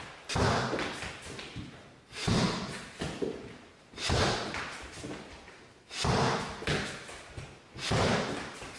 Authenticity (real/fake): real